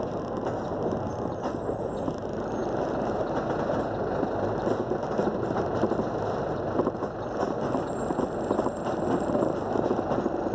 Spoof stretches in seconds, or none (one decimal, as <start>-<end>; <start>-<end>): none